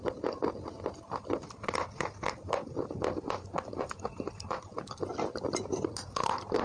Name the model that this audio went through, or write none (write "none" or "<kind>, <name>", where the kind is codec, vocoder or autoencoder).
none